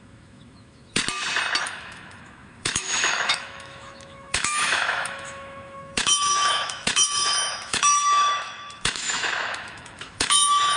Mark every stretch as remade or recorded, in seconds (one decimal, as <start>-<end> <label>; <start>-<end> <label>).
0.0-1.0 remade; 1.0-1.6 recorded; 1.6-10.8 remade